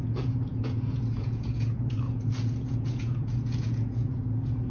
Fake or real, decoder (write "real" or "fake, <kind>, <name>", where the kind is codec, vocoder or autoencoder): fake, vocoder, Vocos